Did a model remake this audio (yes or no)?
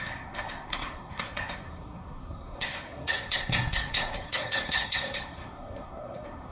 yes